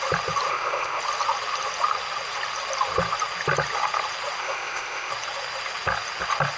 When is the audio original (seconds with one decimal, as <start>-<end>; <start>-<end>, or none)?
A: 0.0-0.5; 1.0-4.4; 5.1-6.6